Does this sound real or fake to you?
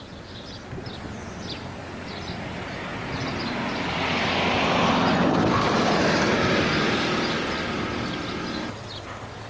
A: real